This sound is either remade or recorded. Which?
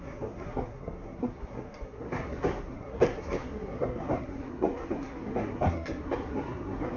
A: remade